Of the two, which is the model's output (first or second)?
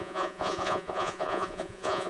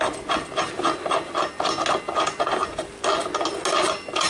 first